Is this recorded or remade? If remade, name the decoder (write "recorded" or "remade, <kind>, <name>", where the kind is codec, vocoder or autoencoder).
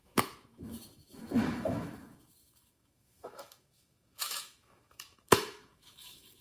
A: remade, autoencoder, DAC-VAE